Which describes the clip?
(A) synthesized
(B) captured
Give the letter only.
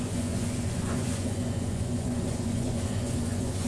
A